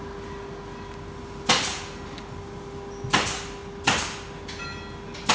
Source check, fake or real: real